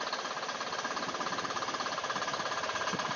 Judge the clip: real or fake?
real